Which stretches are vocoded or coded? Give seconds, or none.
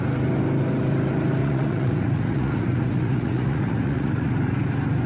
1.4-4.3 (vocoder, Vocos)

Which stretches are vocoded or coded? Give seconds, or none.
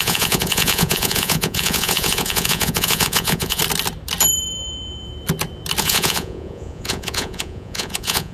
0.0-3.6 (vocoder, Vocos); 5.8-8.3